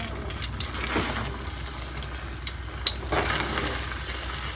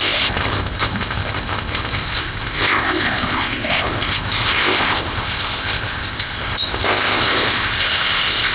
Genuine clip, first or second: first